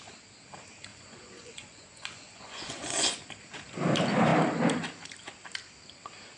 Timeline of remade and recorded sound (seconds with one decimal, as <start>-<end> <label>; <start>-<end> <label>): 0.0-0.9 recorded; 0.9-3.2 remade; 3.2-6.4 recorded